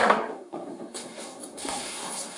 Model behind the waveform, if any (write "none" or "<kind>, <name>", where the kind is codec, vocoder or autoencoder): codec, SNAC